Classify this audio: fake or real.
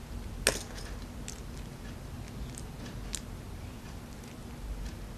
real